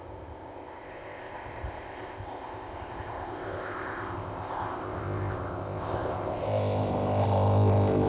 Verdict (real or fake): fake